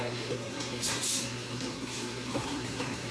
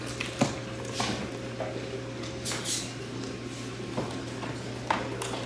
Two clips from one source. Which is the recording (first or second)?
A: second